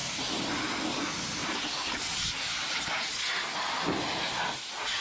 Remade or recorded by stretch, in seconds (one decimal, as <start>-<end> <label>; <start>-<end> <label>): 0.0-5.0 recorded

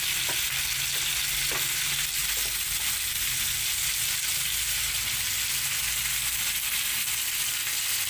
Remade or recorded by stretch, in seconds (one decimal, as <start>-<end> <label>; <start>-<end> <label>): 0.0-8.1 recorded

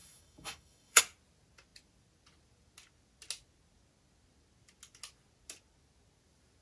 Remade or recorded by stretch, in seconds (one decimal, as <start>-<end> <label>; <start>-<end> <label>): 0.0-1.0 remade; 1.0-6.6 recorded

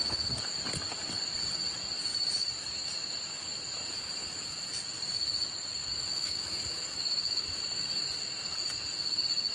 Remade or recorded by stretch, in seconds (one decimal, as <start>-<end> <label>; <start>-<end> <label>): 0.0-2.1 recorded; 2.1-4.7 remade; 4.7-5.8 recorded; 5.8-8.1 remade; 8.1-9.5 recorded

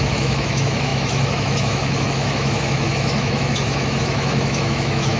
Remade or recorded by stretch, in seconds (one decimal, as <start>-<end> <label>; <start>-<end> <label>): 0.0-5.2 remade

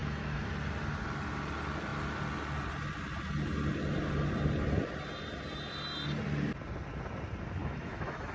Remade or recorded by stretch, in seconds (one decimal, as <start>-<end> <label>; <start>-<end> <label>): 0.0-0.5 remade; 0.5-7.6 recorded; 7.6-8.3 remade

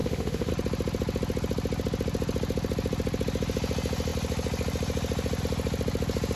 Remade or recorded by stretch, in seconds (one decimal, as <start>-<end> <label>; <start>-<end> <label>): 0.0-0.5 remade; 0.5-6.4 recorded